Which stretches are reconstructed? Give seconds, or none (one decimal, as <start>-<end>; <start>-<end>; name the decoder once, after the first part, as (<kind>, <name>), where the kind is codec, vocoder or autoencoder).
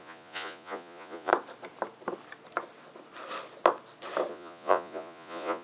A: 0.0-1.3 (vocoder, Vocos); 4.3-5.6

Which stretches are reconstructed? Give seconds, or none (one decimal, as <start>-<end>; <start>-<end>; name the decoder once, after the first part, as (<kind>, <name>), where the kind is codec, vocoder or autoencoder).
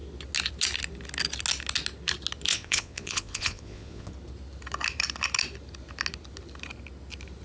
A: 2.5-4.1 (vocoder, Vocos)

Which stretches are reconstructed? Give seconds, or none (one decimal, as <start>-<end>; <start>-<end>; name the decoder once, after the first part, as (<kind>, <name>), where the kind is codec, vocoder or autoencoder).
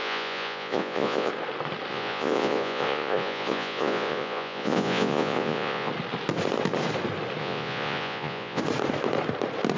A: 0.0-1.3 (vocoder, Vocos); 1.9-5.9; 7.4-8.6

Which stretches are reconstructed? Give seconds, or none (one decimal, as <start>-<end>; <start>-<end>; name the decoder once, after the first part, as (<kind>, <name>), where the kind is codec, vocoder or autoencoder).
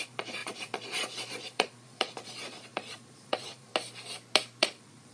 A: 0.0-3.7 (vocoder, Vocos); 4.6-5.1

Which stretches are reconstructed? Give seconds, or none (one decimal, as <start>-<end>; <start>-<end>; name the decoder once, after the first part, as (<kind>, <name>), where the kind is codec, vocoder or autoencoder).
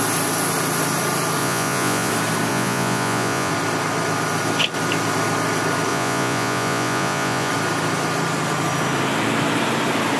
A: 1.4-2.1 (vocoder, Vocos); 2.5-3.5; 5.9-7.5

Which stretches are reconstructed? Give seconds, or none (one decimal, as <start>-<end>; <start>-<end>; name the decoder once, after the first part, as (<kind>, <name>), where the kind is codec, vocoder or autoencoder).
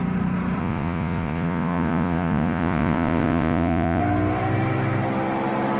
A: 0.6-4.0 (vocoder, Vocos)